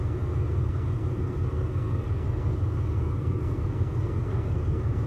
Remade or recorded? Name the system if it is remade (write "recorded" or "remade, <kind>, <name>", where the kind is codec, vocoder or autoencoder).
remade, codec, SNAC